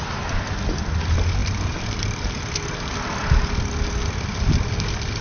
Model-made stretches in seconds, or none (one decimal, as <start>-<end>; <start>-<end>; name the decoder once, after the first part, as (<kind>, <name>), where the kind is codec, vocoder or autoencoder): none